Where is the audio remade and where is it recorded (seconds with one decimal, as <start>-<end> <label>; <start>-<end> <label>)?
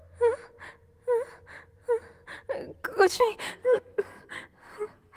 0.0-3.1 recorded; 3.1-5.2 remade